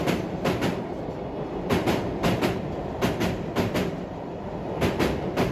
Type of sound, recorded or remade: remade